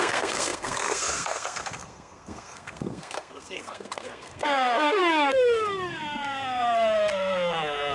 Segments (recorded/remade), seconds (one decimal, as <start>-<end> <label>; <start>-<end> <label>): 0.0-7.9 remade